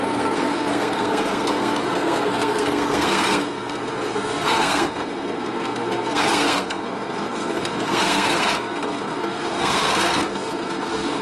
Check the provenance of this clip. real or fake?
fake